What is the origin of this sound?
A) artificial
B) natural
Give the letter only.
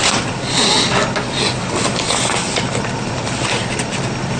B